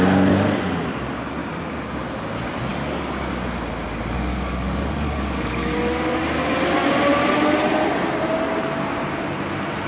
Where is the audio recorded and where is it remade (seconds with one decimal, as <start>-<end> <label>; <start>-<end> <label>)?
0.0-2.7 recorded; 2.7-3.3 remade; 3.3-4.3 recorded; 4.3-6.2 remade; 6.2-9.9 recorded